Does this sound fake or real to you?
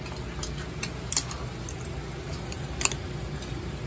real